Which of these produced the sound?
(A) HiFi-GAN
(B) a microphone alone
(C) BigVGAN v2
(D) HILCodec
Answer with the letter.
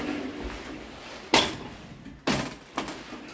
B